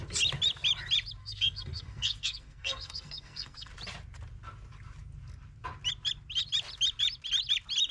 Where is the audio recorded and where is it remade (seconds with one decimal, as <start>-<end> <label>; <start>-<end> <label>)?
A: 0.0-1.2 recorded; 1.2-3.7 remade; 3.7-7.9 recorded